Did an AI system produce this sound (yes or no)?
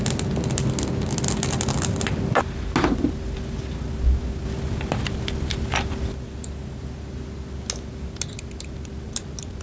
no